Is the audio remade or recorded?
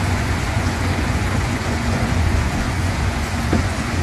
remade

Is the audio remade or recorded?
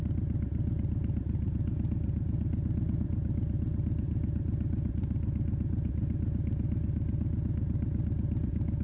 recorded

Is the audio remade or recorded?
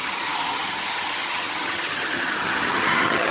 remade